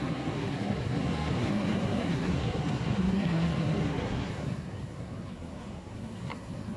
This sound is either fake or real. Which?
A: fake